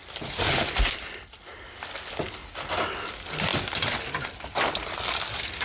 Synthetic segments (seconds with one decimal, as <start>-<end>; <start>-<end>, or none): none